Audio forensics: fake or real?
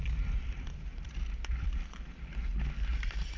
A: fake